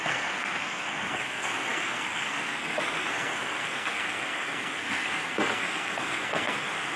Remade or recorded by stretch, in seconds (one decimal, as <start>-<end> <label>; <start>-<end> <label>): 0.0-7.0 remade